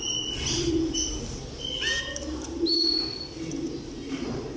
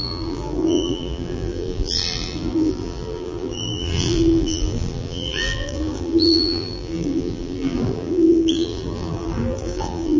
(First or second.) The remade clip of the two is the second